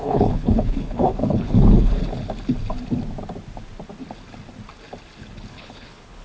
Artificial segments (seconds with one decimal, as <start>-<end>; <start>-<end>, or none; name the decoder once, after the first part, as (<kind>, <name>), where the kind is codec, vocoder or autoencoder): 0.0-2.0 (codec, HILCodec); 5.5-6.2